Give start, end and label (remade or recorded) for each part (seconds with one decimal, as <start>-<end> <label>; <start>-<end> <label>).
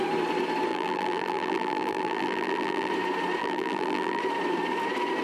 0.0-0.7 recorded; 0.7-2.9 remade; 2.9-3.4 recorded; 3.4-4.2 remade; 4.2-5.2 recorded